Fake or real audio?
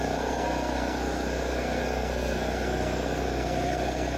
fake